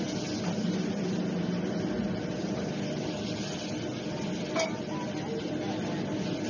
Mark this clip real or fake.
real